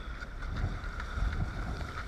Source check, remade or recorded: recorded